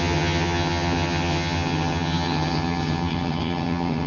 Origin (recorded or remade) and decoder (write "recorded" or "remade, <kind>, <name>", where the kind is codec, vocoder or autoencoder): remade, vocoder, HiFi-GAN